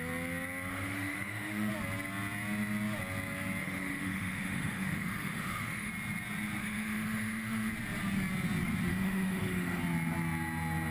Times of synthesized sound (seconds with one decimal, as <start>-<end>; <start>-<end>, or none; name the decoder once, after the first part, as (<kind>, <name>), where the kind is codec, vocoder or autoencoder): 0.7-1.7 (autoencoder, DAC-VAE); 3.6-5.9; 6.6-7.7; 8.9-9.8